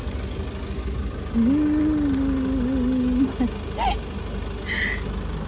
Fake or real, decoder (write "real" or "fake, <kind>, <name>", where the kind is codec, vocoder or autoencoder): real